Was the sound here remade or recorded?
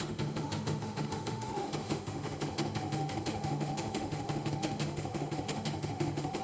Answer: remade